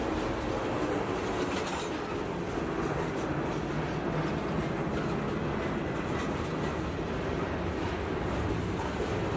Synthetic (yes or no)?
no